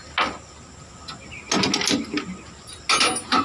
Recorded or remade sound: recorded